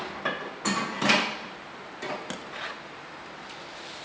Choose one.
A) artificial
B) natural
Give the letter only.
B